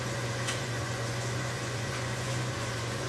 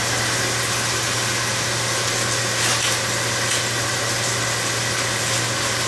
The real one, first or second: second